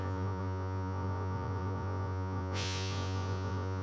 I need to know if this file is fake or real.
fake